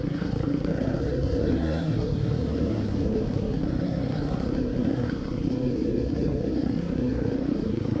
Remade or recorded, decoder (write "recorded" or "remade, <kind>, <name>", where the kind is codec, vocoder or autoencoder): remade, codec, SNAC